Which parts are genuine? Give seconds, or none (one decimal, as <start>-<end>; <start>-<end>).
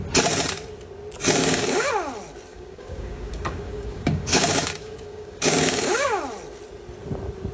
0.0-1.4; 1.9-2.5; 6.2-7.5